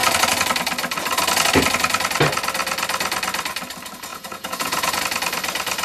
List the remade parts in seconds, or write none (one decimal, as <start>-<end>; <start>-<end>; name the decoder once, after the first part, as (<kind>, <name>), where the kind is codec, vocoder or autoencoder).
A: 4.1-5.0 (vocoder, Vocos)